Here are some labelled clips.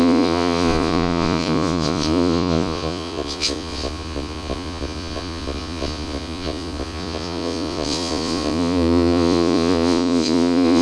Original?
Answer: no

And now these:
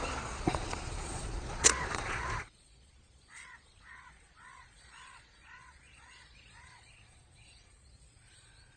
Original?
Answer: no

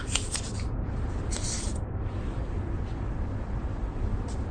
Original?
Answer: yes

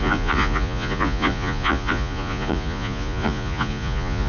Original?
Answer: no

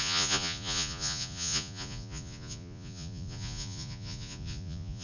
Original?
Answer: no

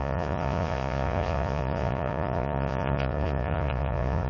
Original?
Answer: no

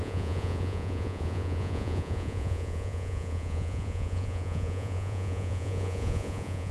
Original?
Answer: no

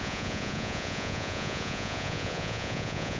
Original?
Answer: no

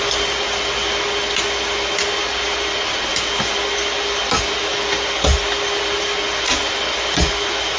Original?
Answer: yes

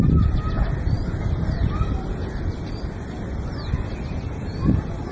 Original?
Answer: yes